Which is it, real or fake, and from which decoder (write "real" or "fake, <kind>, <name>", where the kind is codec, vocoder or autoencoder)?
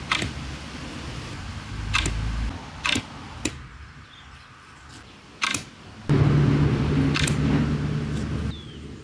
real